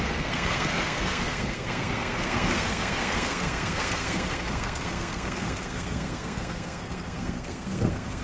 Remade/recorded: remade